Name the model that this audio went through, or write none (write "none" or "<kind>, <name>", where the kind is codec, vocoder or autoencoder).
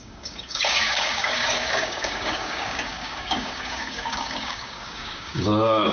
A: codec, DAC